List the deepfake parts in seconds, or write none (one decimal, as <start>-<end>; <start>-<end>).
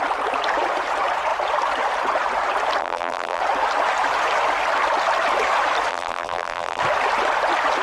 2.8-3.4; 5.9-6.8